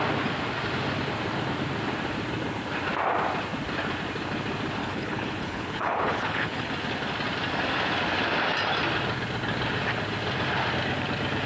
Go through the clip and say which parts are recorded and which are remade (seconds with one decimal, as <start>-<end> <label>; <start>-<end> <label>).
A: 0.0-4.8 recorded; 4.8-6.7 remade; 6.7-11.5 recorded